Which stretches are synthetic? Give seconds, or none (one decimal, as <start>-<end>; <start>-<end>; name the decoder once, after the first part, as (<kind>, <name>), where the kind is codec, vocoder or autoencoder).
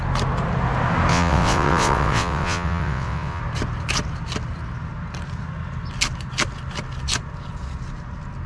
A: 1.1-3.4 (vocoder, WaveNeXt)